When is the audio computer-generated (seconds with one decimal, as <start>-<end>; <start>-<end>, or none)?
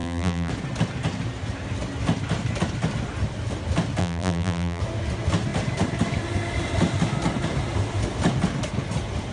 0.0-0.5; 4.0-4.8